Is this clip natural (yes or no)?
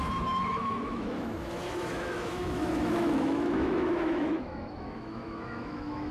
no